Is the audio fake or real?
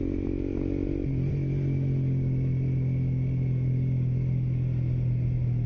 real